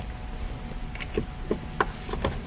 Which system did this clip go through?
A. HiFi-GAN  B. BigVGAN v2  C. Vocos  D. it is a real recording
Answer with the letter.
D